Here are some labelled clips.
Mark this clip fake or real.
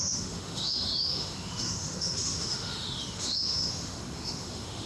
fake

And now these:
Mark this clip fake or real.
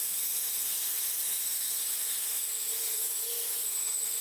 fake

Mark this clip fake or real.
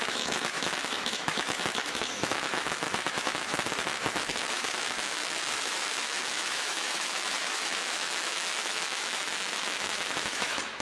fake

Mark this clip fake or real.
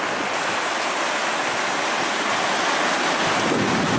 real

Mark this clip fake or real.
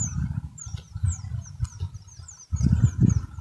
real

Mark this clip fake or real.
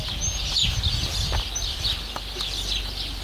real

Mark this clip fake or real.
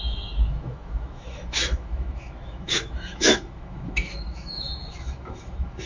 fake